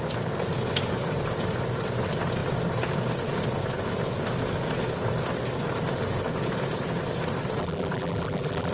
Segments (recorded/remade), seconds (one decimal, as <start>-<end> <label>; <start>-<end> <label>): 0.0-7.6 recorded; 7.6-8.7 remade